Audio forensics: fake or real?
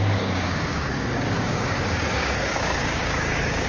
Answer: fake